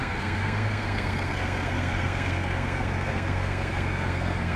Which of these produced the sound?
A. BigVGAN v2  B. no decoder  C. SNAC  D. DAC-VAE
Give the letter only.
C